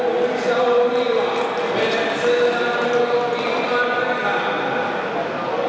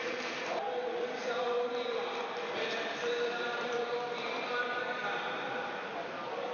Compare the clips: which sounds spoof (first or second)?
second